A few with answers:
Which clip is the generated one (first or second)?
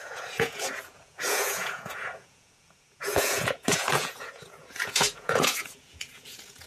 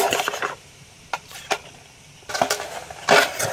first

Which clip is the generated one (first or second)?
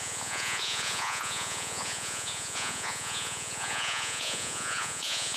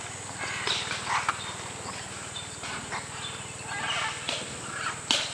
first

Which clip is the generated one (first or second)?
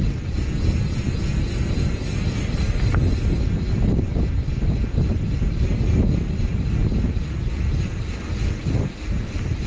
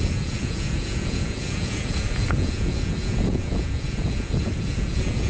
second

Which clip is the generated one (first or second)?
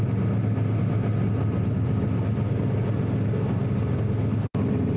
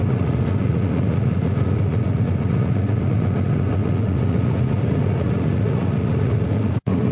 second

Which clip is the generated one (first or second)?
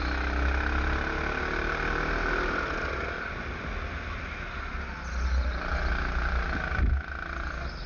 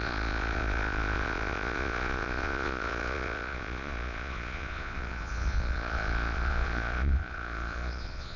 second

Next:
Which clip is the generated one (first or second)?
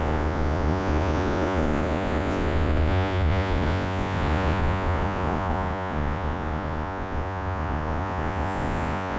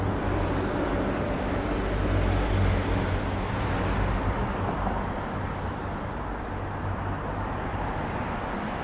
first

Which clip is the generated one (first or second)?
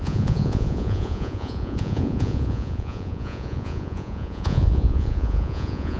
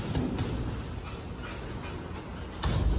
first